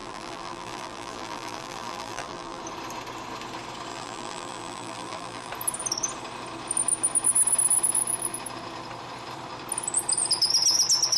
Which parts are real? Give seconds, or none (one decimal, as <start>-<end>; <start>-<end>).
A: 2.6-3.9; 5.5-11.2